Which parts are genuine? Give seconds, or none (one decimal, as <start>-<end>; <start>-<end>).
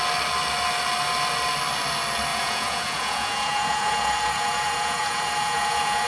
0.0-2.3